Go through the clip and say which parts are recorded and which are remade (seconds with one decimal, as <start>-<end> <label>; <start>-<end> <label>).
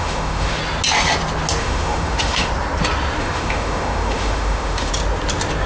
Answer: 0.0-0.6 remade; 0.6-1.6 recorded; 1.6-2.5 remade; 2.5-3.2 recorded; 3.2-4.9 remade; 4.9-5.7 recorded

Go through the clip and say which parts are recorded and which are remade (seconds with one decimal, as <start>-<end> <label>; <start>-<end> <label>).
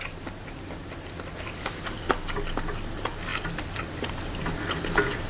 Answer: 0.0-5.3 recorded